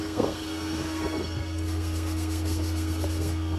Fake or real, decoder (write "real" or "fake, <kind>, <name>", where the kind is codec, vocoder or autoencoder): fake, codec, SNAC